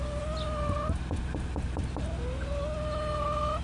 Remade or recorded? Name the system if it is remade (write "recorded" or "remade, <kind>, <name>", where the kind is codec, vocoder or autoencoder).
recorded